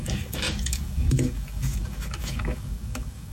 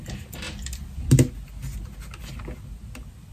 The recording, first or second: second